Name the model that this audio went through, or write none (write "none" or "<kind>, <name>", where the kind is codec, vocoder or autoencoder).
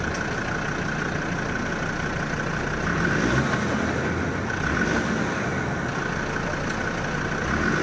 none